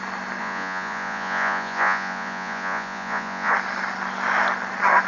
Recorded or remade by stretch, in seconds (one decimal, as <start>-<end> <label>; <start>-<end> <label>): 0.0-0.4 recorded; 0.4-3.5 remade; 3.5-5.1 recorded